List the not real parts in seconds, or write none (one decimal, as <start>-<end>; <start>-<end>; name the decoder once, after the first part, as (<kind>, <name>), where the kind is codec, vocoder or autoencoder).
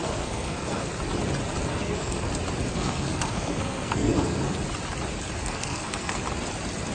0.0-0.9 (codec, SNAC); 1.7-2.3; 2.7-4.6; 5.4-6.2